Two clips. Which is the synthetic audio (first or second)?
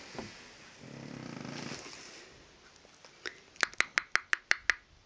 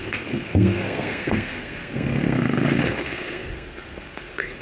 second